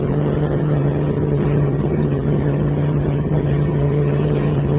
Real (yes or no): no